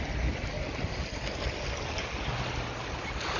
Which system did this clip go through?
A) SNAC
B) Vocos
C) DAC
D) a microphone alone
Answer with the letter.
D